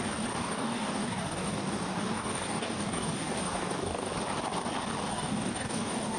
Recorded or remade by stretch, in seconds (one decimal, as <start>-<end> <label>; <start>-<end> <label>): 0.0-0.4 recorded; 0.4-4.1 remade; 4.1-5.1 recorded; 5.1-6.2 remade